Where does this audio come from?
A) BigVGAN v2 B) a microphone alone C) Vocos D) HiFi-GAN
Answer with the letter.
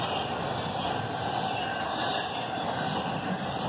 B